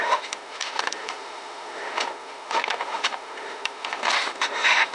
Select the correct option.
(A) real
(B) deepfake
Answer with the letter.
B